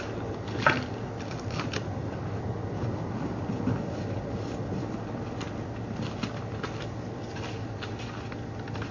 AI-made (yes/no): no